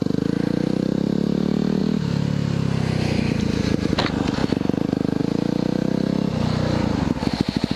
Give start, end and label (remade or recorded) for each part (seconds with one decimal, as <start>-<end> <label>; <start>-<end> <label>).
0.0-7.8 recorded